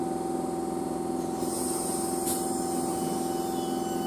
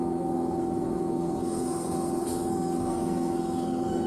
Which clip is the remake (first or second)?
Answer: second